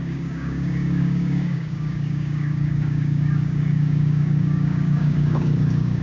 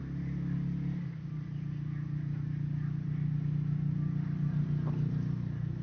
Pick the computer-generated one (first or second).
first